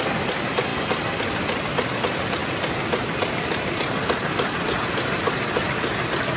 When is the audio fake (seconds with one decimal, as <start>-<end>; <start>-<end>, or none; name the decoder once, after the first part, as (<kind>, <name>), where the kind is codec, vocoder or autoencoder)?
none

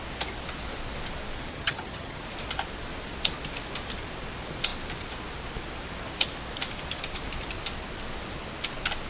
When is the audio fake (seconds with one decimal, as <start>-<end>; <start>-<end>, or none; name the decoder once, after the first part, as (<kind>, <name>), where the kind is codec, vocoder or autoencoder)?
1.5-2.2 (vocoder, HiFi-GAN)

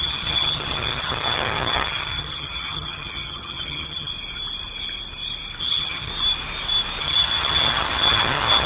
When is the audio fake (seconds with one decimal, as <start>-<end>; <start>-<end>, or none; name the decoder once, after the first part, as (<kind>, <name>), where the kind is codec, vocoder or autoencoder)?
0.0-4.1 (vocoder, HiFi-GAN); 5.6-6.1; 7.0-8.7

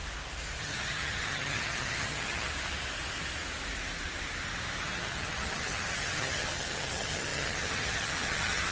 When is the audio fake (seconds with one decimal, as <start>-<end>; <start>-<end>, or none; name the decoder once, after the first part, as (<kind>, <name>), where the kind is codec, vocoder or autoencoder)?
0.6-2.5 (vocoder, HiFi-GAN); 4.8-8.7

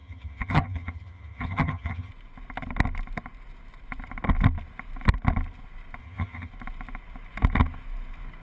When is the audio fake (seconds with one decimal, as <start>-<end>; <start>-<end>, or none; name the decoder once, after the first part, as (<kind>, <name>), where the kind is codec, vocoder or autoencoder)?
0.0-2.1 (vocoder, HiFi-GAN); 6.0-6.5

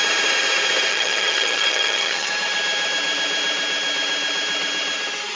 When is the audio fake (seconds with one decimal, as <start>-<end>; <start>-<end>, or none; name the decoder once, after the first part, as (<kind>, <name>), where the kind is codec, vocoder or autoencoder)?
0.9-2.3 (vocoder, HiFi-GAN)

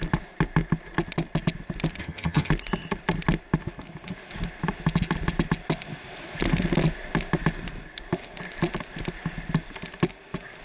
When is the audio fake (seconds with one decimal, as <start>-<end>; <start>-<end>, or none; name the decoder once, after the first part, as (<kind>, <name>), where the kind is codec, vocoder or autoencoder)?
2.0-2.5 (vocoder, HiFi-GAN)